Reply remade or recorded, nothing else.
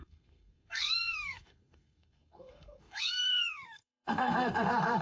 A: remade